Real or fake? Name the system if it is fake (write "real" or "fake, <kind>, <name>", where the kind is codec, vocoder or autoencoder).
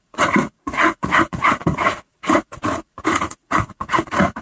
fake, vocoder, Vocos